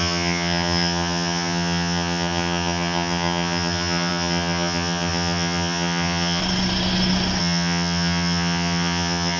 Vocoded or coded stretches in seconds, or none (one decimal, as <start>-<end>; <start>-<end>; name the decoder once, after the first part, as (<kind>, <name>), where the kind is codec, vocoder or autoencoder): 0.0-6.4 (vocoder, HiFi-GAN); 7.4-9.4